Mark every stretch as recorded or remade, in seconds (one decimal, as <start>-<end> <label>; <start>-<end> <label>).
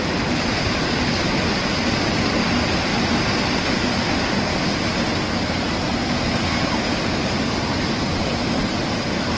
0.0-2.9 recorded; 2.9-3.9 remade; 3.9-5.9 recorded; 5.9-8.5 remade; 8.5-9.4 recorded